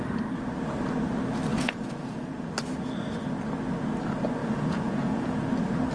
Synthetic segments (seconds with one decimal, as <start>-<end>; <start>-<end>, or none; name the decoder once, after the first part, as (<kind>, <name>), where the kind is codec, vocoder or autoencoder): 1.5-2.5 (vocoder, Vocos); 4.4-5.5